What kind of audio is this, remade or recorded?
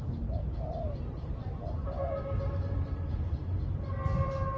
recorded